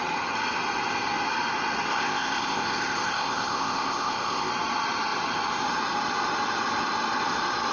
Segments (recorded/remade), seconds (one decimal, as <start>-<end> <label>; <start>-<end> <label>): 0.0-1.9 recorded; 1.9-4.5 remade; 4.5-7.7 recorded